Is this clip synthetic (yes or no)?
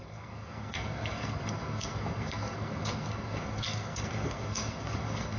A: yes